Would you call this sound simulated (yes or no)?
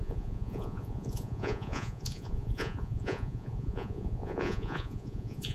yes